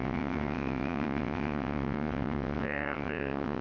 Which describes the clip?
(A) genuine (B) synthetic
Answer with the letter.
B